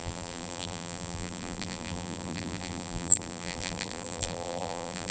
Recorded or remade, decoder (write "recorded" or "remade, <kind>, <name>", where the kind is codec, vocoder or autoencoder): remade, vocoder, BigVGAN v2